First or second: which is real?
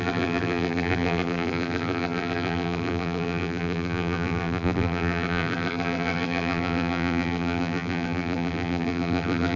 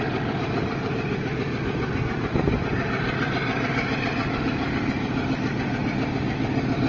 second